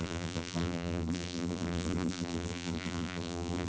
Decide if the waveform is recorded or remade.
remade